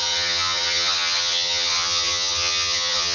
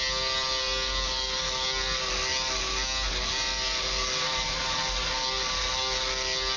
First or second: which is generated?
first